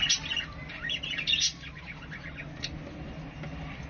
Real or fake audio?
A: real